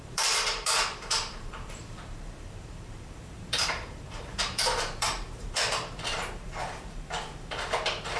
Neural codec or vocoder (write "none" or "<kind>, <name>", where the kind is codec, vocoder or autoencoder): vocoder, BigVGAN v2